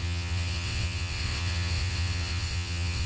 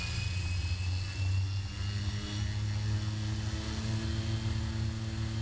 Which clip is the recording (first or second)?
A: second